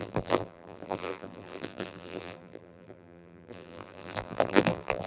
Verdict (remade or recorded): remade